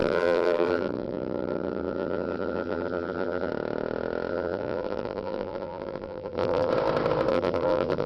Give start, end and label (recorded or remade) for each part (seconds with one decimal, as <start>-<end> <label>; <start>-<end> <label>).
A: 0.0-3.5 remade; 3.5-4.3 recorded; 4.3-6.7 remade; 6.7-7.3 recorded; 7.3-8.1 remade